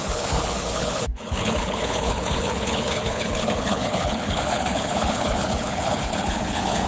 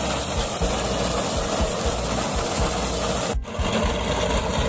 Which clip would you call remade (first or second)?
first